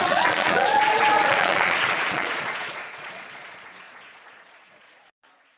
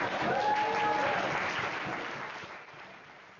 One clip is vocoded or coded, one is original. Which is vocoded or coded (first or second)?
first